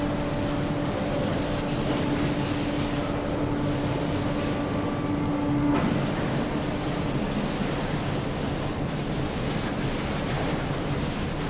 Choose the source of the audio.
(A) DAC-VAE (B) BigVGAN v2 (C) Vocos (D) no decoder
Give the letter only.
D